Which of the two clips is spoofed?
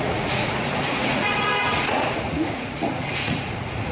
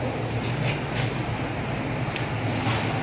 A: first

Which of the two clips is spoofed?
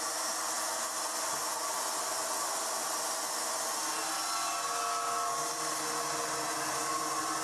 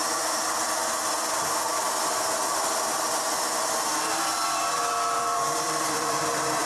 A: second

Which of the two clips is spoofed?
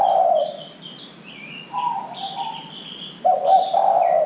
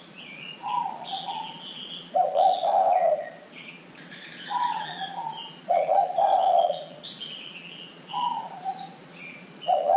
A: second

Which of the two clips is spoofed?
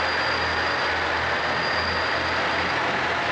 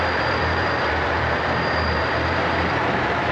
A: second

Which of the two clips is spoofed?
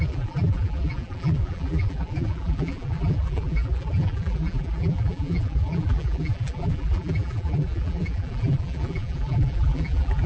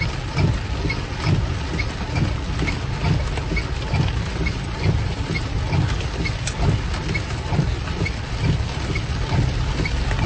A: first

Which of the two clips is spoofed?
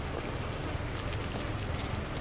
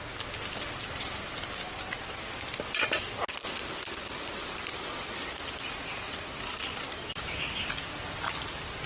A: second